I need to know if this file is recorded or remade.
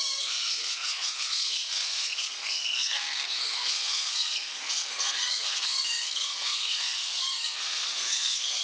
remade